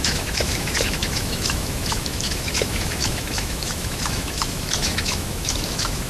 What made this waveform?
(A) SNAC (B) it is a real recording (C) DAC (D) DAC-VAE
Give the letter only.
D